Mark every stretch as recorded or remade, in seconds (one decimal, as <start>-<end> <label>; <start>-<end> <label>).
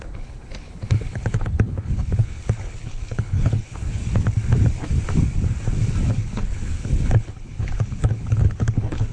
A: 0.0-4.0 remade; 4.0-6.1 recorded; 6.1-9.1 remade